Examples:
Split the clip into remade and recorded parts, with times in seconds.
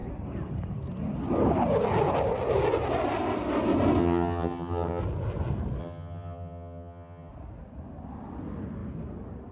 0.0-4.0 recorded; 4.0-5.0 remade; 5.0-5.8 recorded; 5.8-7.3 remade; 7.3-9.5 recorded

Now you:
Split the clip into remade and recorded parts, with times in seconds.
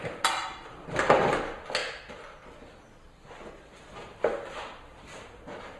0.0-5.8 recorded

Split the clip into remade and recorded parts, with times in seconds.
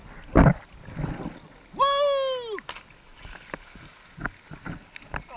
0.0-5.4 recorded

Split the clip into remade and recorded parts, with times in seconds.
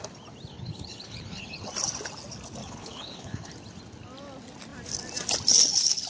0.0-0.5 recorded; 0.5-1.7 remade; 1.7-2.6 recorded; 2.6-3.5 remade; 3.5-6.1 recorded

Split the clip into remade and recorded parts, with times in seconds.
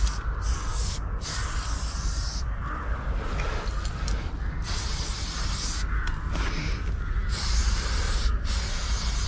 0.0-0.7 recorded; 0.7-1.4 remade; 1.4-9.3 recorded